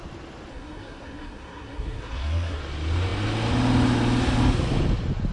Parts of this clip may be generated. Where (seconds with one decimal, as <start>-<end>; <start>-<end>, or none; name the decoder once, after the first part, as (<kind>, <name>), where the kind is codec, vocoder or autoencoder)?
0.5-2.6 (codec, SNAC)